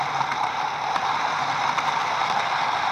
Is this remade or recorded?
remade